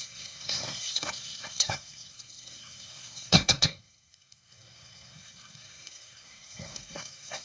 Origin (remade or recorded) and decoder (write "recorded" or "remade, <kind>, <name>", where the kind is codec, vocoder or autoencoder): remade, codec, SNAC